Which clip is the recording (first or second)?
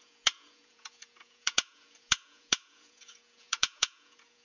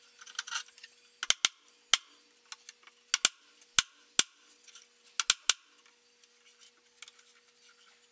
second